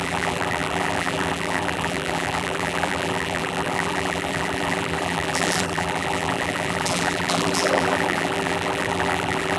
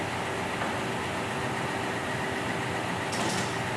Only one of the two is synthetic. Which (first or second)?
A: first